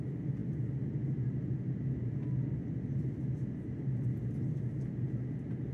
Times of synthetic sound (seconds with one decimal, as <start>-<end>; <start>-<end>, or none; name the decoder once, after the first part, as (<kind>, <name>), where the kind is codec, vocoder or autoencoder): none